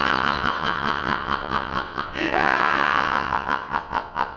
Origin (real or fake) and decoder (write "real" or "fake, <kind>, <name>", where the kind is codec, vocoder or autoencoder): fake, vocoder, WaveNeXt